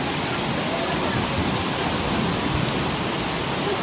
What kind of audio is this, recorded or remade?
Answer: recorded